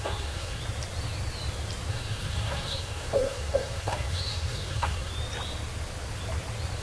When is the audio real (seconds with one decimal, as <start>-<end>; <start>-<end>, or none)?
0.6-1.9; 5.1-6.8